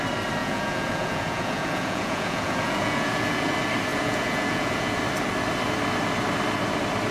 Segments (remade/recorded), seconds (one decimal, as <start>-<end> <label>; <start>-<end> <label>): 0.0-0.4 recorded; 0.4-3.5 remade; 3.5-3.9 recorded; 3.9-5.0 remade; 5.0-7.1 recorded